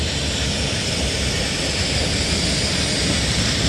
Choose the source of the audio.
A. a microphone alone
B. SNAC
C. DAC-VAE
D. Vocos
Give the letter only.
A